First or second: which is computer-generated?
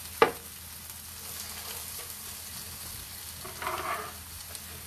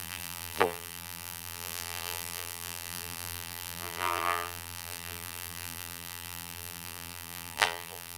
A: second